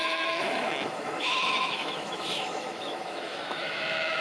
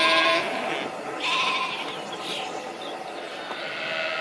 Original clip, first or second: second